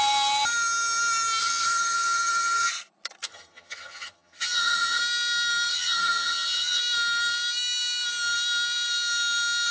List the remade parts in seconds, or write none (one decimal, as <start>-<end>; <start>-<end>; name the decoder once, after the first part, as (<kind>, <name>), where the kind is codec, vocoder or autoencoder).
1.4-2.7 (vocoder, HiFi-GAN); 3.3-5.0; 5.7-6.8